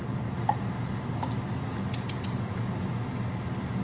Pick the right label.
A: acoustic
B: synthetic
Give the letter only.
A